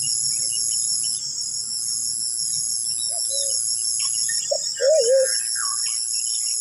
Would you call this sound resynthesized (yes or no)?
no